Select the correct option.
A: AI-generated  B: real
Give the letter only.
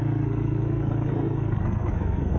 A